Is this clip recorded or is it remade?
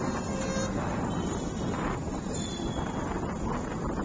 recorded